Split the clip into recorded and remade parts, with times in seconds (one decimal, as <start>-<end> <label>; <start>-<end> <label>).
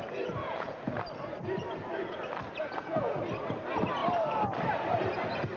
0.0-0.4 recorded; 0.4-0.9 remade; 0.9-2.6 recorded; 2.6-3.2 remade; 3.2-5.6 recorded